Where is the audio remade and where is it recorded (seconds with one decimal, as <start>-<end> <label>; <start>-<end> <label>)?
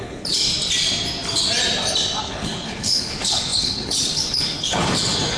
0.0-0.5 remade; 0.5-2.2 recorded; 2.2-5.4 remade